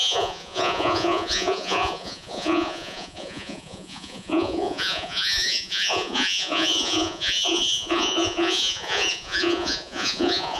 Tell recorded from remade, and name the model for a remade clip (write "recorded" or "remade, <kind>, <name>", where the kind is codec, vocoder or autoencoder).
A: remade, vocoder, Vocos